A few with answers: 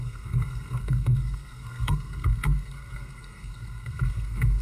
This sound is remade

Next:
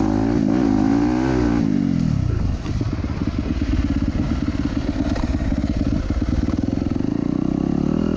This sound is recorded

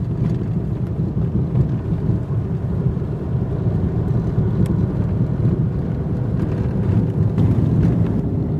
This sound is recorded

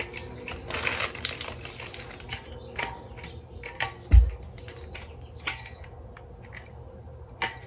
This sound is recorded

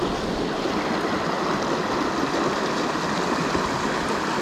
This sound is recorded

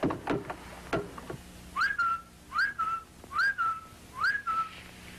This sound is recorded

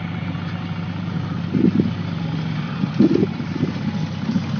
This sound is recorded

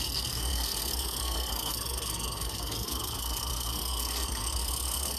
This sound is remade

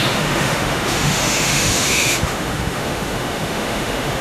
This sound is remade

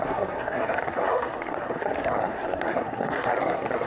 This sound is remade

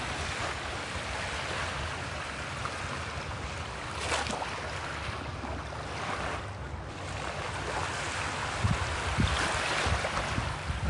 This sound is recorded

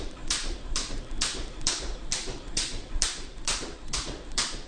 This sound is remade